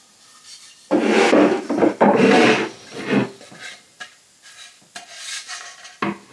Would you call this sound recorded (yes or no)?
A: yes